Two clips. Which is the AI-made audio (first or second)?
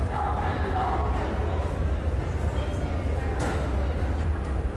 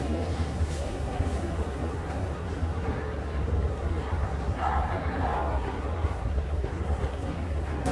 second